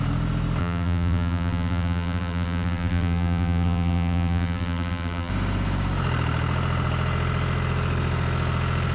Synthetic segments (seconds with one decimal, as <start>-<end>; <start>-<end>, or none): 0.6-5.3